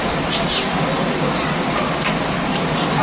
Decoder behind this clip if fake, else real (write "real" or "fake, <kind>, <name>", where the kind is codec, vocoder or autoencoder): real